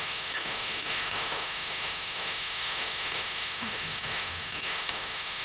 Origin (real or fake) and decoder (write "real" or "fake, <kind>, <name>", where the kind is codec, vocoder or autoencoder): fake, autoencoder, DAC-VAE